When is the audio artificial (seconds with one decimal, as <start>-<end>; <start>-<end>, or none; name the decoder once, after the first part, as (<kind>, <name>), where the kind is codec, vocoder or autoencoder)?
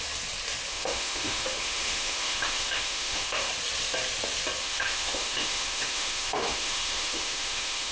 0.7-3.5 (autoencoder, DAC-VAE); 4.6-7.9